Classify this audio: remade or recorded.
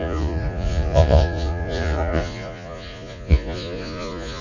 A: remade